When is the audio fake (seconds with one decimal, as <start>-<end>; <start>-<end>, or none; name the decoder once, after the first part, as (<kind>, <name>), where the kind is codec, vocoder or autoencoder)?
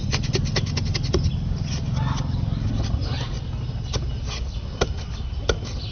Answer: none